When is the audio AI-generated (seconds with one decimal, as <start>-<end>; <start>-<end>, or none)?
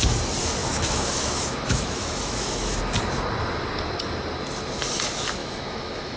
0.6-2.8; 5.4-6.2